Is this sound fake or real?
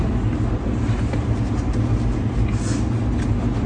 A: real